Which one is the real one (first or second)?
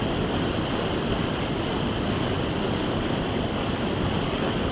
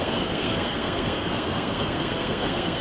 first